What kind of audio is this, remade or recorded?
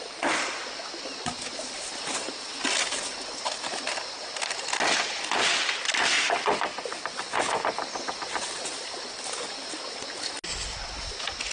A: recorded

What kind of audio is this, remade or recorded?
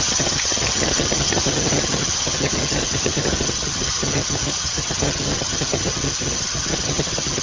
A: remade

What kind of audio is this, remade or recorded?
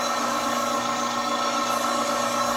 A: remade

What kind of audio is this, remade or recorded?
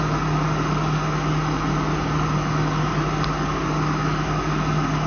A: recorded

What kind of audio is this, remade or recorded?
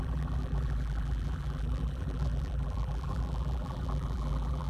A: remade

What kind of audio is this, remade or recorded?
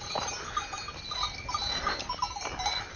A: recorded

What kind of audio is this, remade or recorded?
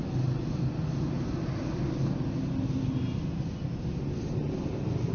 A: recorded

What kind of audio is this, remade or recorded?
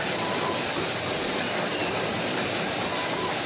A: remade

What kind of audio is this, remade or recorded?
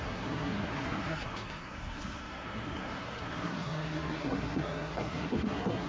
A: remade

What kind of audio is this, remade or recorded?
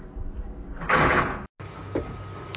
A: recorded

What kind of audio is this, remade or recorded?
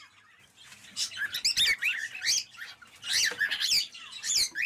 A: recorded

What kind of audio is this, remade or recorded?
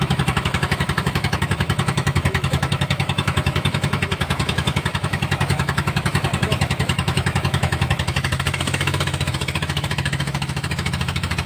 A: remade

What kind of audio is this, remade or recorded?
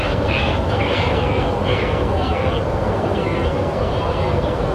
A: remade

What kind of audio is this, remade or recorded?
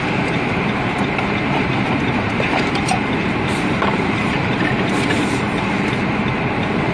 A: remade